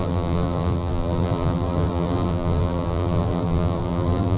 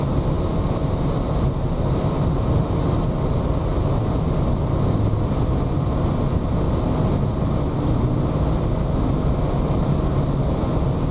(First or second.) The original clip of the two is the second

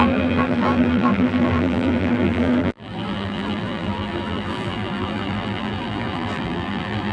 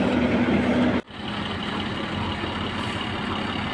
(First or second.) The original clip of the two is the second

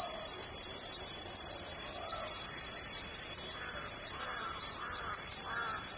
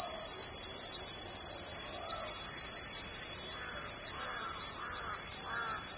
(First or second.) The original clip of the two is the second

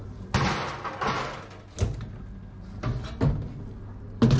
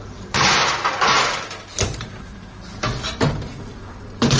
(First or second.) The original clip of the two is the first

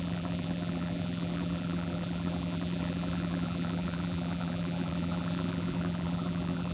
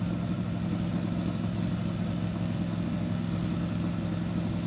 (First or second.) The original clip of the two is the second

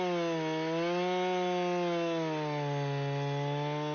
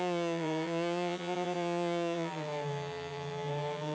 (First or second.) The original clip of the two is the first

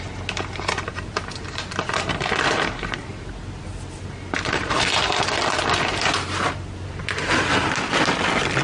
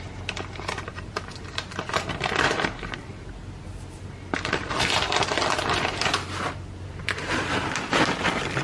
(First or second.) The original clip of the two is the first